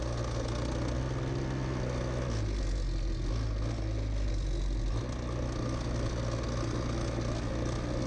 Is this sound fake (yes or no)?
no